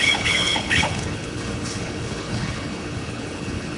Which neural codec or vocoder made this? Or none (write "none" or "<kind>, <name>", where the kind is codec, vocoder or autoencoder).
codec, HILCodec